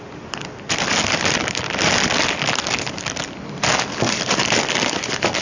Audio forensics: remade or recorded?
recorded